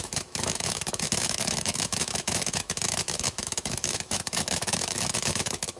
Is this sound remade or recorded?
remade